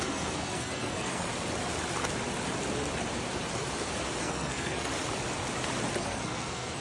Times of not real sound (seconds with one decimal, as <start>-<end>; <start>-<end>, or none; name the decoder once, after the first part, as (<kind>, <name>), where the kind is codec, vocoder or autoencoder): 0.0-1.3 (codec, SNAC); 4.2-4.9; 6.0-6.8